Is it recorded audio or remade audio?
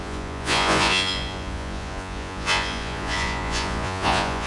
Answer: remade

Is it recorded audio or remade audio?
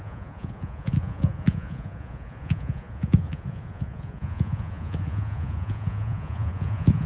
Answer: remade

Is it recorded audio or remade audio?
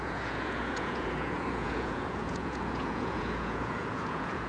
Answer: remade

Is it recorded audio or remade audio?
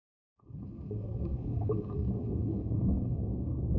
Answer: remade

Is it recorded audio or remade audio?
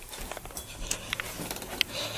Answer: recorded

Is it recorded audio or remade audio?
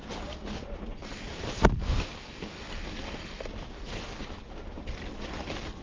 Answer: recorded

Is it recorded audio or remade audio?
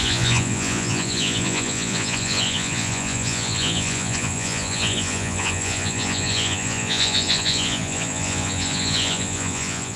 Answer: remade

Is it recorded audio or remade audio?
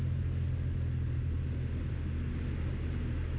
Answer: recorded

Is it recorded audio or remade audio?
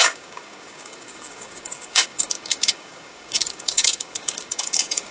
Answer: remade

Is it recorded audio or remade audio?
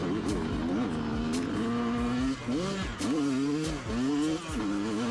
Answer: recorded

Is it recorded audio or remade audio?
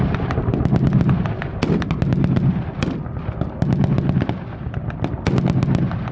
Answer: recorded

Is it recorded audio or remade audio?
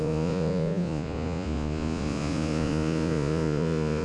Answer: remade